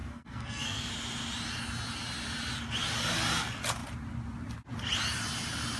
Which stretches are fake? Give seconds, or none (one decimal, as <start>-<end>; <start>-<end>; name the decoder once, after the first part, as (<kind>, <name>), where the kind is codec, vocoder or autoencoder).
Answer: 0.0-0.9 (codec, SNAC)